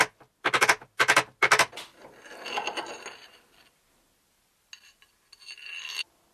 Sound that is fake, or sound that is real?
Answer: real